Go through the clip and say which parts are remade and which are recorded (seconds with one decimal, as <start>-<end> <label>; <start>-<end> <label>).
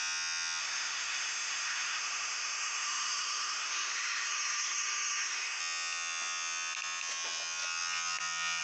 0.0-0.6 recorded; 0.6-5.6 remade; 5.6-8.6 recorded